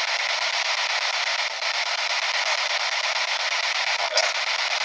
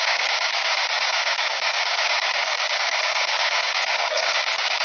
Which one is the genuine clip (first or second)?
first